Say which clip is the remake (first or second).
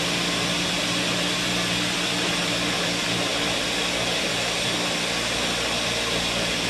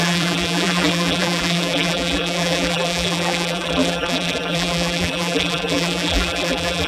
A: second